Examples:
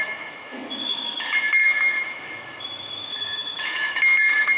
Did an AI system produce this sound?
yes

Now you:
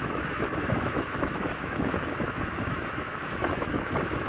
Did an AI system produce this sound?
yes